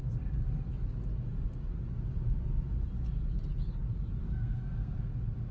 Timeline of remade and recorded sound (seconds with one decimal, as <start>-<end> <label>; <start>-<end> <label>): 0.0-4.2 recorded; 4.2-5.1 remade; 5.1-5.5 recorded